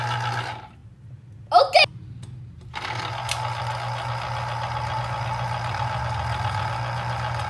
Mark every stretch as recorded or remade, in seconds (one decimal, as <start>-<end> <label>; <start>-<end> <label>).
0.0-7.5 recorded